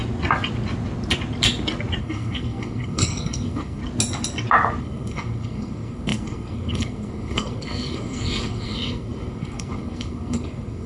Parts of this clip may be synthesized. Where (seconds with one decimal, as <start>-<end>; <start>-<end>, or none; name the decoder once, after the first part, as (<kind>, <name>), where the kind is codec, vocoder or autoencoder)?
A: 2.0-3.8 (codec, SNAC); 4.8-10.9